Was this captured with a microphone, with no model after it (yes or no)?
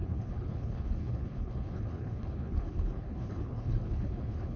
no